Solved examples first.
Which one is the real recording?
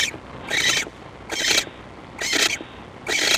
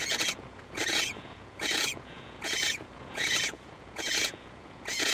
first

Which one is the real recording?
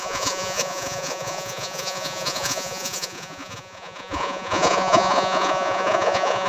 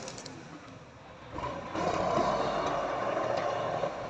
second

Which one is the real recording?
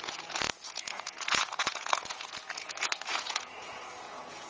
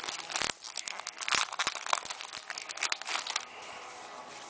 second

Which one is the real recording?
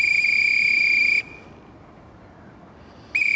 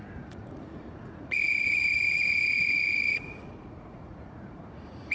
first